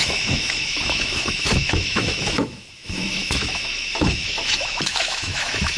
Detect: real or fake fake